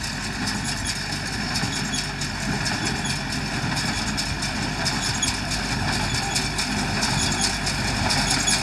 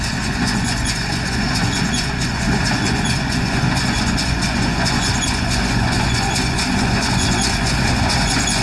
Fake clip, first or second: second